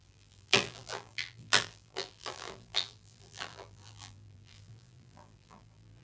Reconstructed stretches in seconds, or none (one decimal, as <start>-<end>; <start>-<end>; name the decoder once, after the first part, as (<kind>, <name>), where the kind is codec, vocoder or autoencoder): 0.0-6.0 (vocoder, BigVGAN v2)